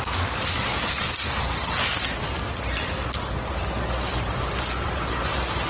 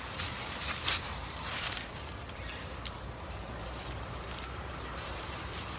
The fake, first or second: second